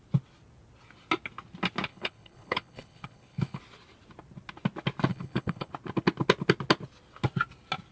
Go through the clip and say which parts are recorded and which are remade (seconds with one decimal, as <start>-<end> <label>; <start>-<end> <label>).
0.0-1.9 recorded; 1.9-3.6 remade; 3.6-5.1 recorded; 5.1-5.7 remade; 5.7-7.9 recorded